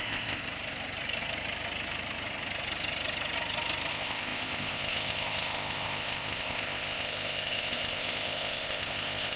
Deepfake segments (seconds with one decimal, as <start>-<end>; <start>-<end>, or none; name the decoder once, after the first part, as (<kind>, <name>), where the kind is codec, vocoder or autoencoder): 0.0-0.4 (codec, ZipCodec); 3.9-9.4